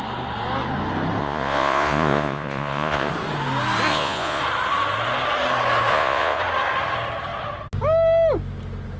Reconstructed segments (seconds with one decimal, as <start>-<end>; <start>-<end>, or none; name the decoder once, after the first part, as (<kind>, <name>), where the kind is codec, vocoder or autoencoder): 1.2-3.1 (vocoder, Vocos); 3.9-4.4; 5.9-6.4